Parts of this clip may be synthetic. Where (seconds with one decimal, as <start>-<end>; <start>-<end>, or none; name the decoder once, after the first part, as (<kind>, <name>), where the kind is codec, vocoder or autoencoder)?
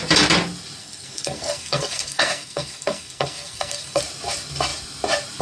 0.8-4.0 (codec, SNAC)